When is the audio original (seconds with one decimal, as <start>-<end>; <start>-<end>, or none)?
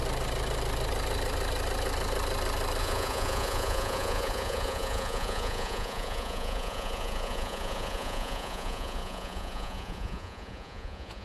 0.0-2.8